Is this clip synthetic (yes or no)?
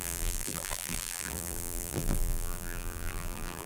yes